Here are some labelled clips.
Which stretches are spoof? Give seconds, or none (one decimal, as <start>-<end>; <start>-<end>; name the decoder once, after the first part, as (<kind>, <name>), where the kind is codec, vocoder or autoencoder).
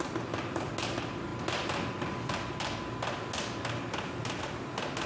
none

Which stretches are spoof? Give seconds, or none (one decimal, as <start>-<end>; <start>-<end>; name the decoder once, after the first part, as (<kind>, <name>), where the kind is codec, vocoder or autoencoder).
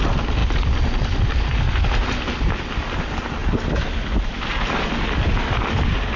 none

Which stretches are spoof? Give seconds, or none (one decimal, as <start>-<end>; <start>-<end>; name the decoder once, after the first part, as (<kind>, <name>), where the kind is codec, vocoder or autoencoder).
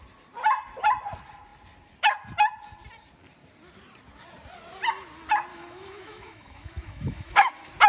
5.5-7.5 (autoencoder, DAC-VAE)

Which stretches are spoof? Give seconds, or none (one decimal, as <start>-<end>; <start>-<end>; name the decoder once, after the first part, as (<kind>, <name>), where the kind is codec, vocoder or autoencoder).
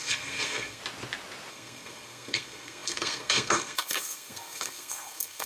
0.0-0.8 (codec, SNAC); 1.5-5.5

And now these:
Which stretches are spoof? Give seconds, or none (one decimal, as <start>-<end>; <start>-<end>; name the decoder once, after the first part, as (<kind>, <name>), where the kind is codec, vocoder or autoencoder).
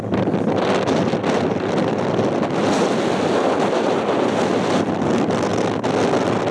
none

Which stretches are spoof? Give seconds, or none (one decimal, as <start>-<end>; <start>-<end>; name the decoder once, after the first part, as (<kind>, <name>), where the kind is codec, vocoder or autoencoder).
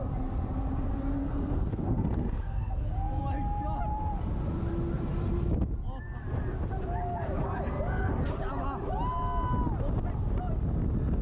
1.2-3.2 (codec, SNAC)